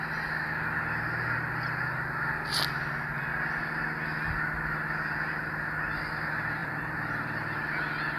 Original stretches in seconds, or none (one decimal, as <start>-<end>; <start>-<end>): 0.0-6.6; 7.6-8.2